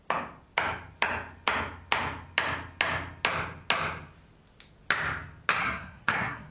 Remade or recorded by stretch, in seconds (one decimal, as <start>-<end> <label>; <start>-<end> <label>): 0.0-5.6 recorded; 5.6-6.5 remade